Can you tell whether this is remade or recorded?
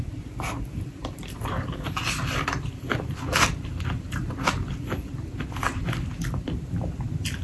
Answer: remade